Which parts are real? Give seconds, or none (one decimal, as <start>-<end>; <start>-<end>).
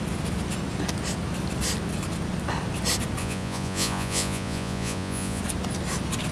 0.0-3.2; 5.4-6.3